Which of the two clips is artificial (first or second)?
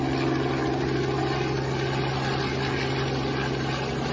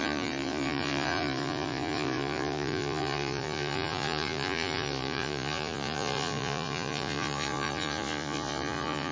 second